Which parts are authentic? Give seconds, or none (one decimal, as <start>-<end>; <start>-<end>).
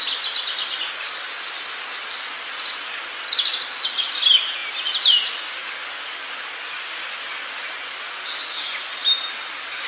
0.0-9.9